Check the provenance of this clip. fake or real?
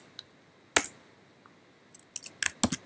real